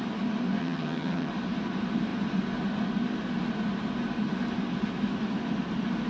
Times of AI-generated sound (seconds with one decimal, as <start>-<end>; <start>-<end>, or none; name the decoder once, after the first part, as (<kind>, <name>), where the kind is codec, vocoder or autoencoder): 0.6-1.3 (vocoder, HiFi-GAN)